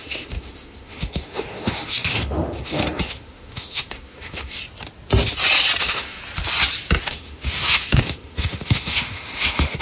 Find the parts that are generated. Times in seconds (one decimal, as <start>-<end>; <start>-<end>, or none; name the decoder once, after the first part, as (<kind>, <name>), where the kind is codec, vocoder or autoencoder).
0.0-4.6 (autoencoder, DAC-VAE); 5.8-6.2; 7.0-9.8